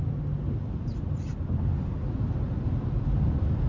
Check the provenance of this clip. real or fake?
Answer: real